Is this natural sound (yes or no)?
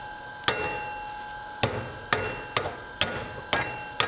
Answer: yes